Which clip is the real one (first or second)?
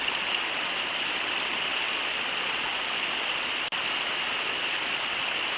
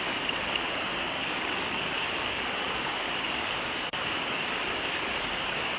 first